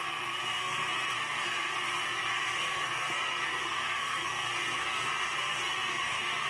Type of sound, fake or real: fake